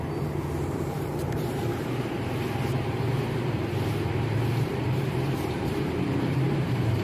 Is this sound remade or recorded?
remade